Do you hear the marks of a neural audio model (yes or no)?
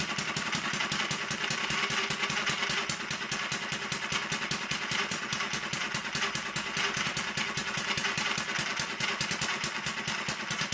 yes